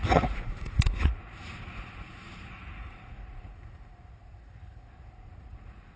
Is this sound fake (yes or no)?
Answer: yes